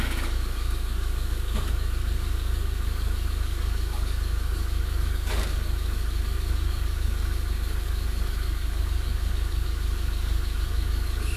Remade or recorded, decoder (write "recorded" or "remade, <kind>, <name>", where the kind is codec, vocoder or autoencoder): remade, codec, DAC